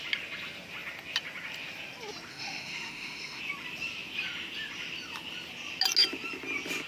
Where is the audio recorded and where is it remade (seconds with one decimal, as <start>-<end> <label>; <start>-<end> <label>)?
0.0-2.3 recorded; 2.3-3.4 remade; 3.4-6.9 recorded